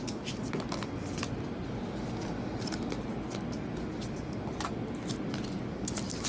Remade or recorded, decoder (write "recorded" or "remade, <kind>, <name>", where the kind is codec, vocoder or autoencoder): recorded